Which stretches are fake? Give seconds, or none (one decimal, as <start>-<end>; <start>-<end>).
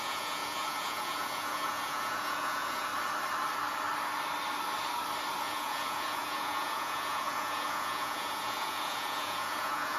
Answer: 0.0-2.9; 5.4-10.0